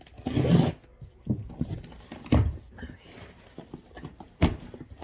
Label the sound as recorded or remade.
recorded